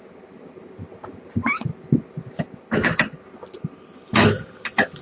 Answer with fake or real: real